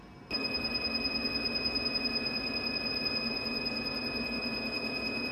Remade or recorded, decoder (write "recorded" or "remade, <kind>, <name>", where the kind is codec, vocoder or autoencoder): recorded